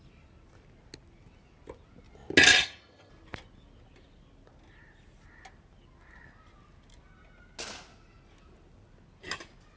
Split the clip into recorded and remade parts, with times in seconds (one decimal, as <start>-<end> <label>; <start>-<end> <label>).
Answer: 0.0-2.5 recorded; 2.5-3.1 remade; 3.1-9.8 recorded